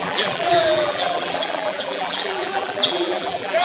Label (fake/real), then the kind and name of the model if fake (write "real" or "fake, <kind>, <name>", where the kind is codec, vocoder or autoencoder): fake, vocoder, BigVGAN v2